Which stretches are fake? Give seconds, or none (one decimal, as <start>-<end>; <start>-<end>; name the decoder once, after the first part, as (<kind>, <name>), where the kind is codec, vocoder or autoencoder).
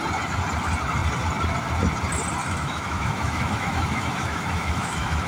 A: 2.4-5.3 (autoencoder, DAC-VAE)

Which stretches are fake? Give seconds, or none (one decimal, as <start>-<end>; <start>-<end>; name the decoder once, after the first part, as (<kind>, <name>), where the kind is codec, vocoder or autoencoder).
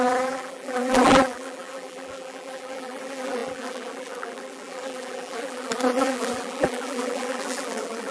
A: 0.0-8.1 (vocoder, BigVGAN v2)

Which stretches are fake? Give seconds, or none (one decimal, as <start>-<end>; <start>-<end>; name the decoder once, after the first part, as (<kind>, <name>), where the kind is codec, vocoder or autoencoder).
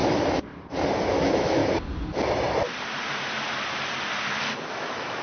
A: 1.1-1.6 (autoencoder, DAC-VAE); 4.7-5.2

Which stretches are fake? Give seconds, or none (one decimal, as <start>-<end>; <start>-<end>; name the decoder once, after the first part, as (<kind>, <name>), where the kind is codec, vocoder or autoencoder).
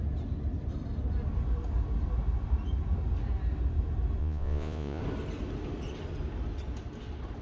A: 4.2-5.0 (vocoder, Vocos)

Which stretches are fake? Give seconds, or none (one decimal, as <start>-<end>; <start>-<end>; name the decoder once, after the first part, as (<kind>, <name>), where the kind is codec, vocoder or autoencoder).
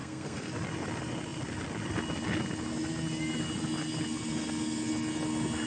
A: 0.0-0.5 (codec, SNAC)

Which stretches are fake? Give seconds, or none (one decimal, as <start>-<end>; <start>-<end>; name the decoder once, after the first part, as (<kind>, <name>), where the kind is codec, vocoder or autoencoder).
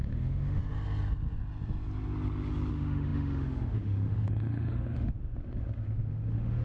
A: 0.0-0.6 (autoencoder, DAC-VAE); 2.7-6.6